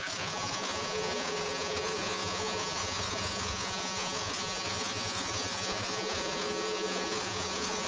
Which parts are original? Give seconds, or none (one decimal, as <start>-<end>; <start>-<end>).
none